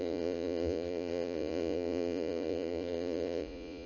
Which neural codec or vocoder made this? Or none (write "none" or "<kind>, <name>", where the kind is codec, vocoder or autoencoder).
vocoder, Vocos